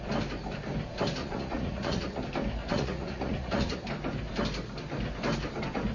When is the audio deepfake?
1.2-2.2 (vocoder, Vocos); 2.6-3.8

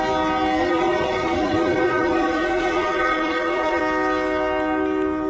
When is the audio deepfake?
0.6-3.8 (vocoder, Vocos)

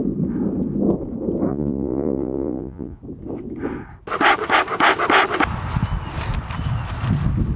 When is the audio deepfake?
1.5-3.0 (vocoder, Vocos)

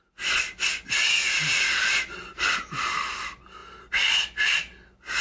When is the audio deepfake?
0.7-1.3 (vocoder, Vocos)

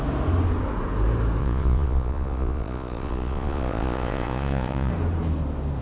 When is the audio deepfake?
1.4-4.9 (vocoder, Vocos)

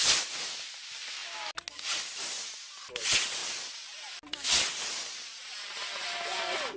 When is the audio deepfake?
none

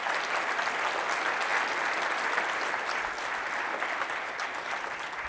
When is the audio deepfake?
none